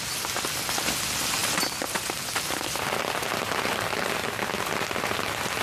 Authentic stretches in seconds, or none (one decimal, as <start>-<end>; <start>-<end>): 0.0-5.6